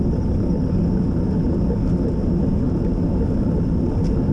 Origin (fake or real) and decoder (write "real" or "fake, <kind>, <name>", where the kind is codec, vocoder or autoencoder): real